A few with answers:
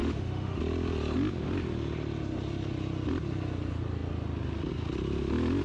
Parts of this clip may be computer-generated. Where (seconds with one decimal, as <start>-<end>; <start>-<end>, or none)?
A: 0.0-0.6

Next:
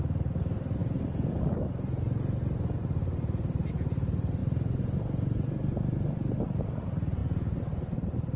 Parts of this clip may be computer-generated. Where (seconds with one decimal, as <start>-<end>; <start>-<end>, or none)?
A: none

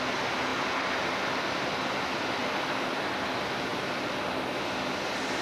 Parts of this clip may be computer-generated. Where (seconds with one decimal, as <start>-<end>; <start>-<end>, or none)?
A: 2.4-3.0; 3.7-4.3

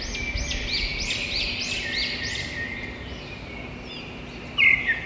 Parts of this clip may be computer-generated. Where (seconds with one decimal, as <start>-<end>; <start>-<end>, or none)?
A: none

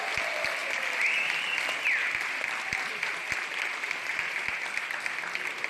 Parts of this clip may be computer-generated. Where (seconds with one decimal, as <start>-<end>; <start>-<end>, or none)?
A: none

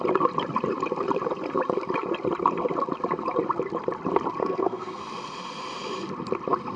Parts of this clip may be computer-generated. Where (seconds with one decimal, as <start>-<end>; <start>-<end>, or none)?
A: 4.4-5.0

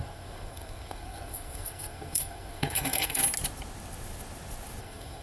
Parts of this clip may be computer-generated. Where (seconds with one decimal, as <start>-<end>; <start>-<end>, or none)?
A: 0.0-3.2; 4.8-5.2

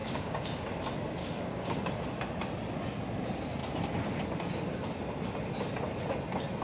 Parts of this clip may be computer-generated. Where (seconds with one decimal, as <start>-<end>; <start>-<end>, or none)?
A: 0.0-0.5; 1.2-1.8